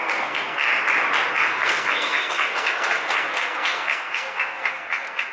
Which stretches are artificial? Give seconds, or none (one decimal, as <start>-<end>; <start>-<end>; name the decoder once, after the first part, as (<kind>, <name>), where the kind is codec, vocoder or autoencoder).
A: 0.0-0.7 (codec, SNAC); 1.3-5.3